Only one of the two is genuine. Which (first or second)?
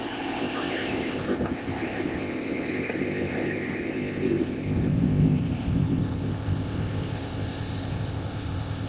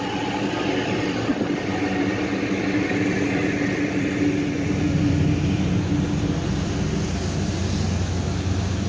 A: second